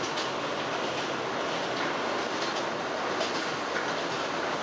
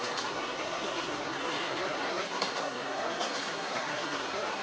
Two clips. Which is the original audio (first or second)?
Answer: first